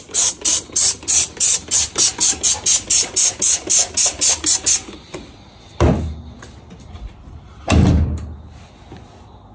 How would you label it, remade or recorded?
recorded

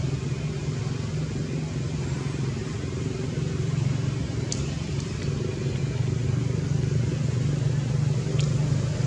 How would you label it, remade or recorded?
recorded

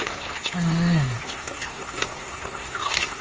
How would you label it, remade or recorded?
remade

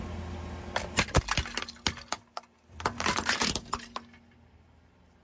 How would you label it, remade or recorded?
recorded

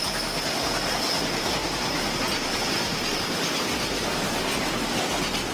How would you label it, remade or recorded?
recorded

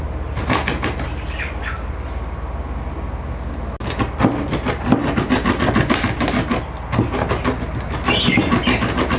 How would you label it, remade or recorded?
recorded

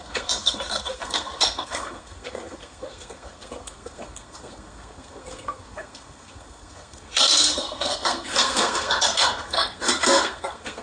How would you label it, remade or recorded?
remade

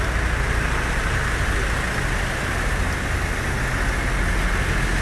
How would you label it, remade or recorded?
recorded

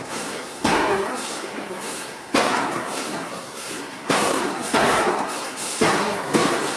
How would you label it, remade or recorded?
remade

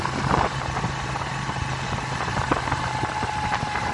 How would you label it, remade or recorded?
recorded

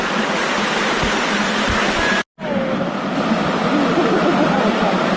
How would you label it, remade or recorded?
recorded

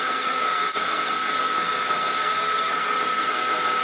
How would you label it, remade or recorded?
remade